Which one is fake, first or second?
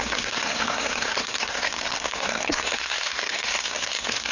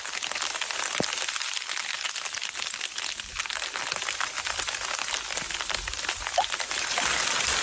first